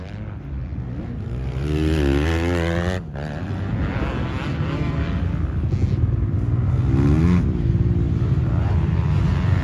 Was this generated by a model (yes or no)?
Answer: no